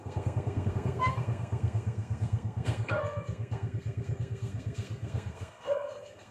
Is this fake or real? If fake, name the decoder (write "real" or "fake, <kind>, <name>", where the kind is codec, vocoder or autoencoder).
fake, codec, SNAC